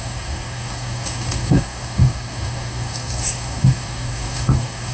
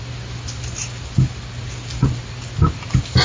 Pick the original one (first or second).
second